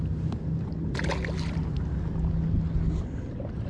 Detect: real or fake real